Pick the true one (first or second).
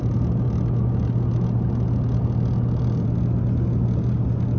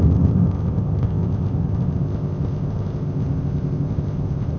first